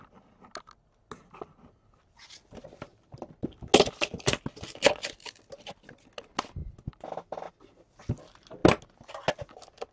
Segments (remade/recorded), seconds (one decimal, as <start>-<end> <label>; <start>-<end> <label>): 0.0-2.9 recorded; 2.9-3.7 remade; 3.7-6.6 recorded; 6.6-7.5 remade; 7.5-9.9 recorded